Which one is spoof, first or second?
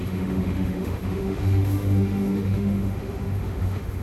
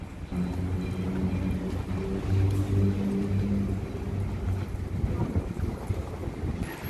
first